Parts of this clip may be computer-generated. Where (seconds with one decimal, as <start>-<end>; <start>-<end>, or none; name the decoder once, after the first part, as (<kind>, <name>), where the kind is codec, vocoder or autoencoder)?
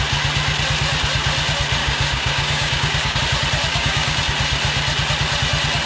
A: 1.8-3.2 (codec, DAC); 3.7-4.2